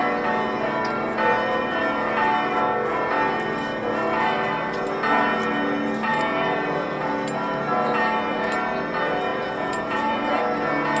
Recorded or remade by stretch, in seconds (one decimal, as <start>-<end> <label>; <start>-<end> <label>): 0.0-6.1 recorded; 6.1-7.1 remade; 7.1-9.3 recorded; 9.3-10.4 remade; 10.4-11.0 recorded